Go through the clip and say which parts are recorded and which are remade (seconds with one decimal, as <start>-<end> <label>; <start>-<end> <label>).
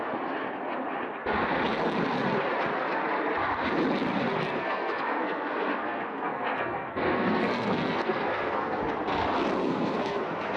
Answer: 0.0-4.5 recorded; 4.5-8.8 remade; 8.8-9.6 recorded; 9.6-10.6 remade